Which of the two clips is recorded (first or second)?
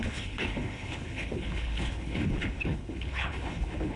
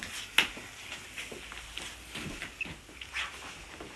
second